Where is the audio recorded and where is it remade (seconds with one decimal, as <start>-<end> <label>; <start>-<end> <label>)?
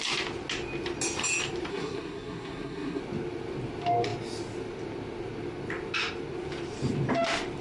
0.0-1.7 recorded; 1.7-3.0 remade; 3.0-7.6 recorded